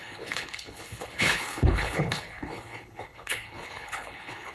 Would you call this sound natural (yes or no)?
no